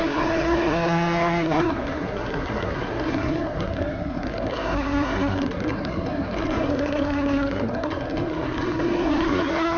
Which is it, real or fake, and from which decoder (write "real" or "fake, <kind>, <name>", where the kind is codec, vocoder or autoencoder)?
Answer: fake, codec, SNAC